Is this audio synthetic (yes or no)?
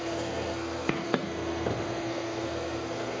yes